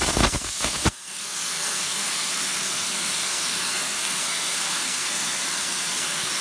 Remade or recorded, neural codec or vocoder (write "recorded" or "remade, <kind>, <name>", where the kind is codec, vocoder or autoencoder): remade, codec, SNAC